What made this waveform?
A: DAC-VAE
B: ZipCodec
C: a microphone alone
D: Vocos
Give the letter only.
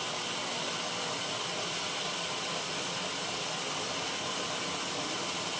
C